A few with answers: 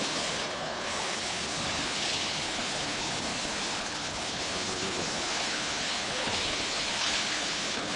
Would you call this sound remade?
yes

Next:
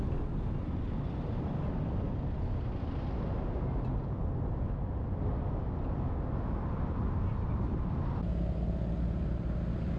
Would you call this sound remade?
no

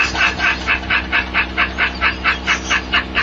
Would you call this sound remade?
no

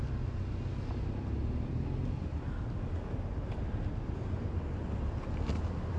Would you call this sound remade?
no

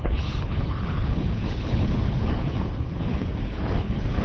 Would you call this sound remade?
yes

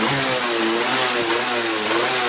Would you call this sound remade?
no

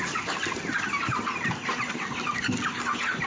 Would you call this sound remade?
no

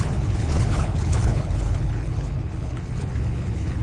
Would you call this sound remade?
yes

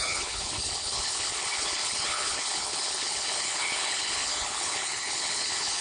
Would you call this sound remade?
yes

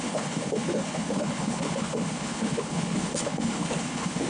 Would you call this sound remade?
yes